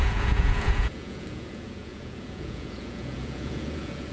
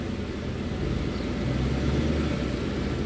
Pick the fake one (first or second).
first